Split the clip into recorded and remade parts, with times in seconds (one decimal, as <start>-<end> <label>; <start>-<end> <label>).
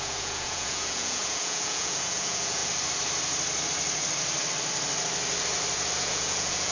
0.0-2.6 remade; 2.6-6.0 recorded; 6.0-6.7 remade